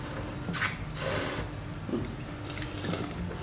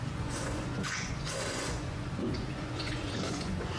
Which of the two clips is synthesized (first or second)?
second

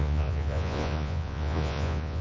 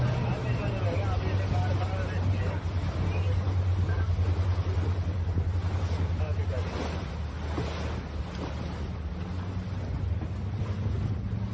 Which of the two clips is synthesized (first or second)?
first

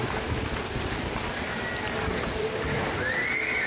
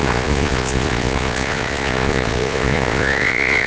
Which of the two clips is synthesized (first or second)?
second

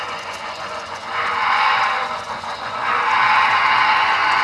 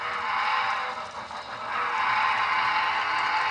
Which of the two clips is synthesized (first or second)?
first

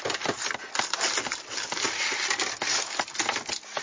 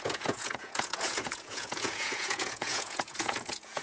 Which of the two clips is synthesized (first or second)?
second